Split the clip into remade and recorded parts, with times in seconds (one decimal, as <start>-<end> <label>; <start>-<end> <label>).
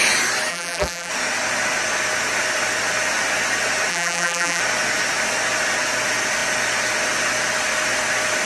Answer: 0.0-0.5 recorded; 0.5-1.1 remade; 1.1-3.9 recorded; 3.9-4.6 remade; 4.6-8.5 recorded